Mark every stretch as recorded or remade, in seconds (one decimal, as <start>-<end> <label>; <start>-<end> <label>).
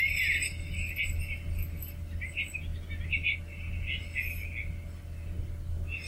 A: 0.0-6.1 recorded